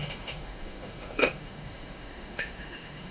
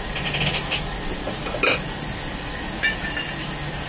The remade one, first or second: first